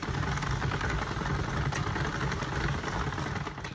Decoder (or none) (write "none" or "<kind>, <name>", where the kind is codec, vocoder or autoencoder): none